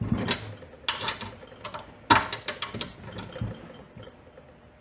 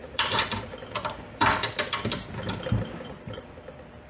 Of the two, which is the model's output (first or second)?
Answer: second